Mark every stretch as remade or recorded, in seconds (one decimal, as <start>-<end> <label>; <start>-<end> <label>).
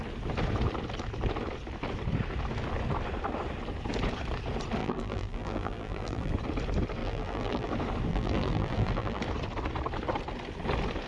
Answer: 0.0-4.8 recorded; 4.8-6.3 remade; 6.3-7.0 recorded; 7.0-7.7 remade; 7.7-8.1 recorded; 8.1-9.2 remade; 9.2-11.1 recorded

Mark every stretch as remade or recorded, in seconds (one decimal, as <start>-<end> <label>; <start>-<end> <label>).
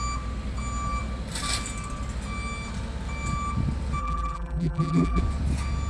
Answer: 0.0-4.0 recorded; 4.0-5.2 remade; 5.2-5.9 recorded